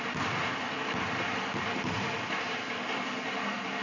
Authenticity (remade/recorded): recorded